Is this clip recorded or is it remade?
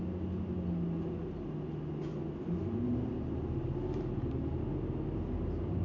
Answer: recorded